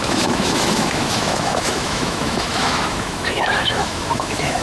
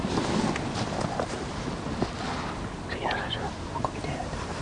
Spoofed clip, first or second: first